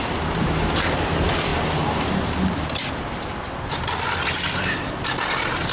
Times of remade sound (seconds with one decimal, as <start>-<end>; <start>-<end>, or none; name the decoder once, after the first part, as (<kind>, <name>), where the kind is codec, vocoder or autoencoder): 0.0-5.7 (vocoder, BigVGAN v2)